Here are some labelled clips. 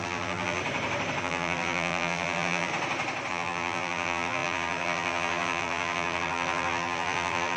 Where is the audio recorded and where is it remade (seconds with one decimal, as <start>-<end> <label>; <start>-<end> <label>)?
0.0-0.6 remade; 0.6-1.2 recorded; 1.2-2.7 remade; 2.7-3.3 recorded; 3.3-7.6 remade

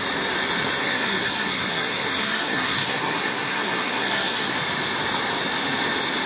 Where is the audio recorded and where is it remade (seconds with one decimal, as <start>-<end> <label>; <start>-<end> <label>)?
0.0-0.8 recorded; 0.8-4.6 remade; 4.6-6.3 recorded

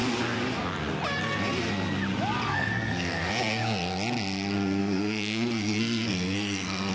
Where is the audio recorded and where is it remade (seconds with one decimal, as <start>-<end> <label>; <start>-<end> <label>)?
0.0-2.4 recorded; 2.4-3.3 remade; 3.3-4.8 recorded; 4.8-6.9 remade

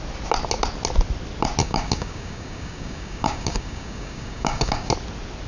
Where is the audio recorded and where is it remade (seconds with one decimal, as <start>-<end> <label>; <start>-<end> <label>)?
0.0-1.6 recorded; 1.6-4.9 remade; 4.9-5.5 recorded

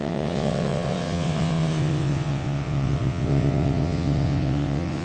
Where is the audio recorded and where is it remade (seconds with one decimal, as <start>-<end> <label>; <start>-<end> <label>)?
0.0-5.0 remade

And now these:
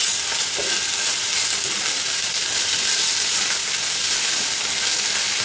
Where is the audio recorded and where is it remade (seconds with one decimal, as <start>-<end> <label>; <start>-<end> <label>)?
0.0-5.4 recorded